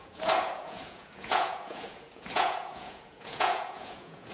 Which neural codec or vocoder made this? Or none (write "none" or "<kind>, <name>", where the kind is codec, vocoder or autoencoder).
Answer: vocoder, Vocos